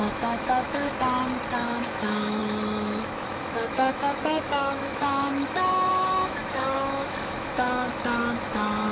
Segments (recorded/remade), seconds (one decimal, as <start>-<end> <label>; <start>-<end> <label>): 0.0-0.9 remade; 0.9-1.6 recorded; 1.6-8.9 remade